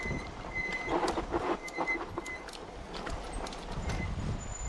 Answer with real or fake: real